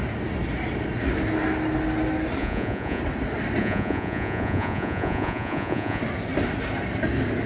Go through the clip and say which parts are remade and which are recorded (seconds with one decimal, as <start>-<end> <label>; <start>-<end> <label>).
0.0-2.4 recorded; 2.4-3.0 remade; 3.0-3.6 recorded; 3.6-6.0 remade; 6.0-7.5 recorded